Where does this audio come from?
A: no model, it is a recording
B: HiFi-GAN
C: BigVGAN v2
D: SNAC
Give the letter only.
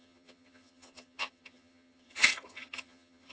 B